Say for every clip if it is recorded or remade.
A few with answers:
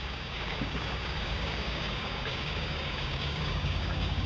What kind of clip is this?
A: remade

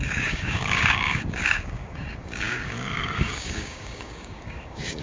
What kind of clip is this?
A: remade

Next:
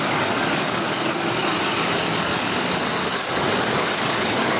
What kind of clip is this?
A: remade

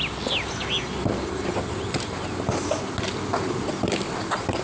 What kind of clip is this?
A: recorded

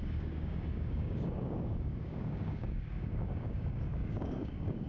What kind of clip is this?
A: remade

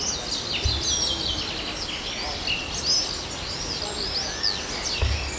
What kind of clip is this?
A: recorded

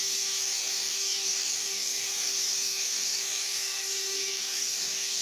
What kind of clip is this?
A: remade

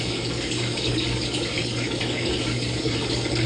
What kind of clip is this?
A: remade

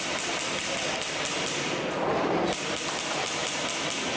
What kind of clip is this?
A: recorded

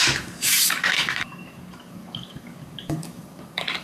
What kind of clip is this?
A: remade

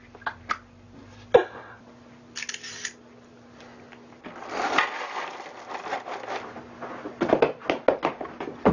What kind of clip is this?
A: recorded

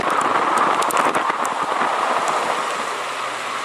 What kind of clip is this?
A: recorded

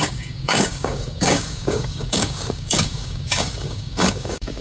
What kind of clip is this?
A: remade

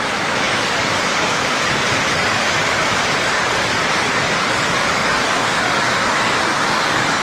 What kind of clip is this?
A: remade